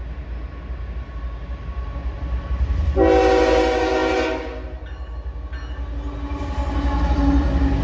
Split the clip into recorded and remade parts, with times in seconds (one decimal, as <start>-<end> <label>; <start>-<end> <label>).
0.0-7.8 recorded